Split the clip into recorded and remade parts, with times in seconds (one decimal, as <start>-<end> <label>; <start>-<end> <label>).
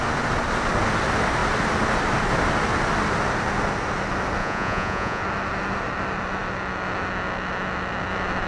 0.0-4.4 recorded; 4.4-5.2 remade; 5.2-8.5 recorded